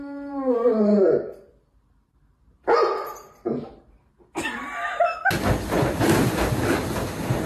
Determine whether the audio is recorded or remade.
recorded